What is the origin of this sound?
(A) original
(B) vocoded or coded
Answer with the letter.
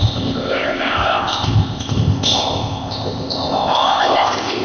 B